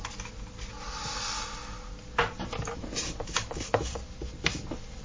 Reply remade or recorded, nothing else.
recorded